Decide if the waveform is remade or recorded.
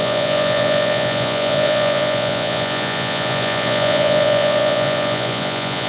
remade